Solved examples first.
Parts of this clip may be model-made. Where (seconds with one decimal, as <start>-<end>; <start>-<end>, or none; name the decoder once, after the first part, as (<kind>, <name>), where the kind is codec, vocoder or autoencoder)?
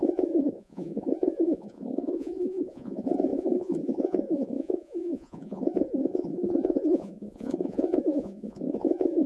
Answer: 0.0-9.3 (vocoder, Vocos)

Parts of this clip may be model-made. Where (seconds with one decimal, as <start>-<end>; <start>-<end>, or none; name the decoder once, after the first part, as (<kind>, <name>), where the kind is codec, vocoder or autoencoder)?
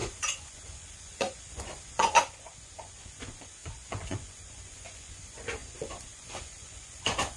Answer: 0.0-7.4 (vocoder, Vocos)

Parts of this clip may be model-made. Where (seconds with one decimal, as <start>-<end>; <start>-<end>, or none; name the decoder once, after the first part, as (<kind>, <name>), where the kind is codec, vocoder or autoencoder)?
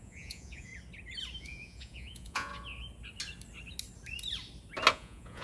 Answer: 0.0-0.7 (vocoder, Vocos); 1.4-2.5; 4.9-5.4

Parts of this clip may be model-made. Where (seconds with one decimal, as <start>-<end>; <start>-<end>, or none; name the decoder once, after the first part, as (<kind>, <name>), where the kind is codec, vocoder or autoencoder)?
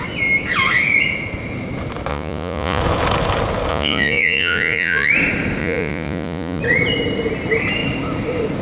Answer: 2.1-2.8 (vocoder, Vocos); 3.7-5.1; 5.6-6.6